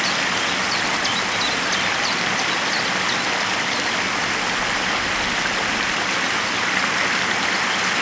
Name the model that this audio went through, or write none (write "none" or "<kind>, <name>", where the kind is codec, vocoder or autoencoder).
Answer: none